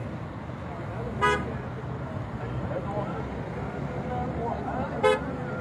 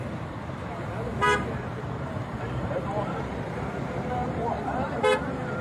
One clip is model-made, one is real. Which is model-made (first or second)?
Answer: second